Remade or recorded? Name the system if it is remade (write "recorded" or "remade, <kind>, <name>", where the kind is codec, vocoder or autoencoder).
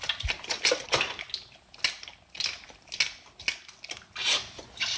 recorded